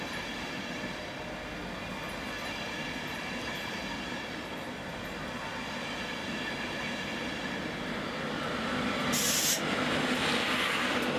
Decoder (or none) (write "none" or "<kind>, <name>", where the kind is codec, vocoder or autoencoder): none